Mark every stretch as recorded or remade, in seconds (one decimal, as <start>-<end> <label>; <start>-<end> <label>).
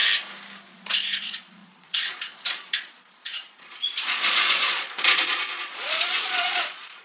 0.0-0.7 recorded; 0.7-7.0 remade